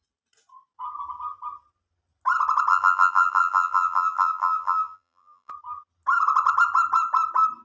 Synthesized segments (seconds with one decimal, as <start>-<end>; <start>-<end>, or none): 2.7-5.5